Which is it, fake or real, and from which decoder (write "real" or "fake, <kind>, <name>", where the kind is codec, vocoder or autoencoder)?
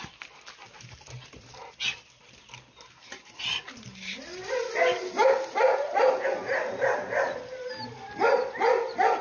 real